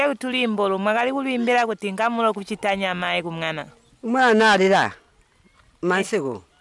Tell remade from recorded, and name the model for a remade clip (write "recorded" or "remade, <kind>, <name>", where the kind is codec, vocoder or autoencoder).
recorded